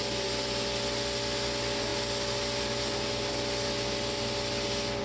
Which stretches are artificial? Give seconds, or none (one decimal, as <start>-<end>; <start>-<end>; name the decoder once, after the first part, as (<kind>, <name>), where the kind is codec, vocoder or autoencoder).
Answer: none